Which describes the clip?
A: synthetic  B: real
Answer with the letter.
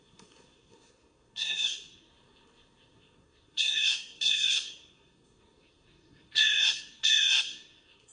A